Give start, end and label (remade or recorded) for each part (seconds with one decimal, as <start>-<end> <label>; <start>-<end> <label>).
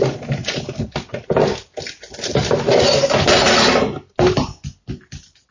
0.0-5.5 recorded